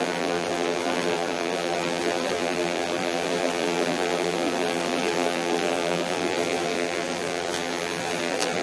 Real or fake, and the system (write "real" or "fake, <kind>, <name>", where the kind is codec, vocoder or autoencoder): fake, vocoder, BigVGAN v2